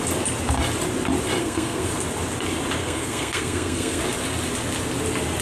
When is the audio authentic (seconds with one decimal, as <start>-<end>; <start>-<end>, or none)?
0.0-1.4; 1.9-2.8; 4.0-5.4